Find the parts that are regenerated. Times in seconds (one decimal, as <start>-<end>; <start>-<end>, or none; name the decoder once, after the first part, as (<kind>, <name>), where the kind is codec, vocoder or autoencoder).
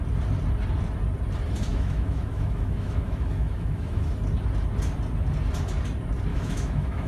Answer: 1.7-4.1 (autoencoder, DAC-VAE); 6.3-7.1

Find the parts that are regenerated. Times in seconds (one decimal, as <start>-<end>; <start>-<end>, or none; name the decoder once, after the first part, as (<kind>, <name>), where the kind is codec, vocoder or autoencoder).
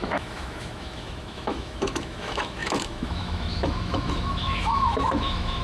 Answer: 0.0-5.6 (autoencoder, DAC-VAE)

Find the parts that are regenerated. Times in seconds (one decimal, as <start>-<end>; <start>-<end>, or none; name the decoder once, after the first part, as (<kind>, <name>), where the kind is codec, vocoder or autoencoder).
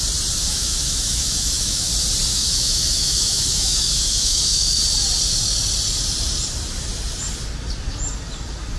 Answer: 0.4-1.9 (autoencoder, DAC-VAE); 2.3-4.8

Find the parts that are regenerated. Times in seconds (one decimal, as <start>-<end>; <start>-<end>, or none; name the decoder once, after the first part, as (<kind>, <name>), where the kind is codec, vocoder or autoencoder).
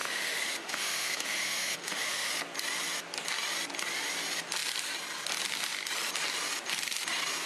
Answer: 0.0-2.3 (autoencoder, DAC-VAE)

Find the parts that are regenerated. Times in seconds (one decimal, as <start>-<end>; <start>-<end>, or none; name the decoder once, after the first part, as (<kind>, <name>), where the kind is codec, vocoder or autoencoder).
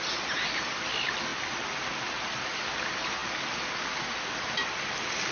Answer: none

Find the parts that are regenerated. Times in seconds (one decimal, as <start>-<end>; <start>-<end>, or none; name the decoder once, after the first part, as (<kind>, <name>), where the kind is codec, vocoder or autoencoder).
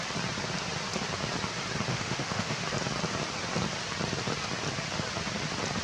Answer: 1.9-2.6 (autoencoder, DAC-VAE)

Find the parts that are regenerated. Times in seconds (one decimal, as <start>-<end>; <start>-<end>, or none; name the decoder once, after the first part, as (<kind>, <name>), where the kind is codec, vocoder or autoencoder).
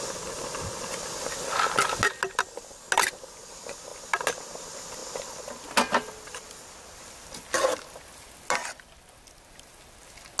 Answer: none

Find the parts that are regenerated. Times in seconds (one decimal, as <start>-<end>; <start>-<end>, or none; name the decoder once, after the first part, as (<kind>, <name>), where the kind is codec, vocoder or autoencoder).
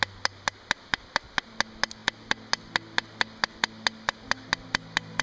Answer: none